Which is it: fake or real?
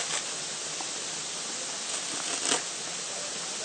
real